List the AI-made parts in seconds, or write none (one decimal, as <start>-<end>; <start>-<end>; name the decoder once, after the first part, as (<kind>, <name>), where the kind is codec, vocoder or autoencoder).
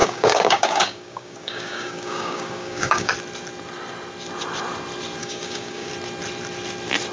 0.0-3.1 (codec, DAC); 5.2-5.9